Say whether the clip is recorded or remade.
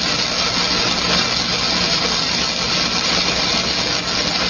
recorded